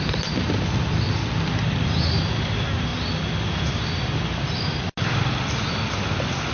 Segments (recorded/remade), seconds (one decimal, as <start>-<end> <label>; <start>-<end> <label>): 0.0-6.5 recorded